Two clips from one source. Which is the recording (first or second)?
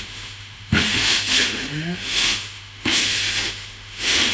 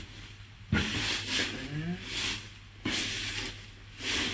second